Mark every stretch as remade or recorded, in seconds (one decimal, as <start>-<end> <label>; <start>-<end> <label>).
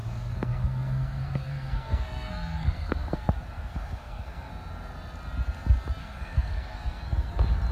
0.0-4.5 remade; 4.5-6.0 recorded; 6.0-7.3 remade; 7.3-7.7 recorded